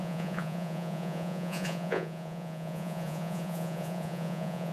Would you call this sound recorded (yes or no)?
no